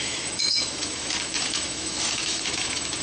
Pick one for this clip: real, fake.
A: fake